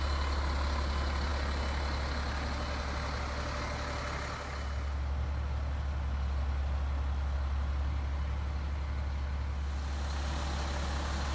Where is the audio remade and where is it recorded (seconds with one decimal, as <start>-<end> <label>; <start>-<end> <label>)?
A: 0.0-11.3 recorded